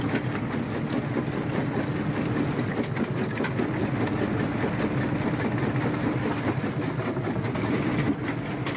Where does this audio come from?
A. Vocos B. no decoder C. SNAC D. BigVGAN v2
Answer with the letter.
B